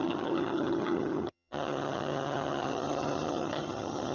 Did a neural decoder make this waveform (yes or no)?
yes